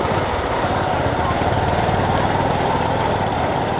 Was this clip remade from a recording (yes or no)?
yes